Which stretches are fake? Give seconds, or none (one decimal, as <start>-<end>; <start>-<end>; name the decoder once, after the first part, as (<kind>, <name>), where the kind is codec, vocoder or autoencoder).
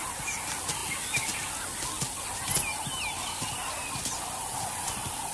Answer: none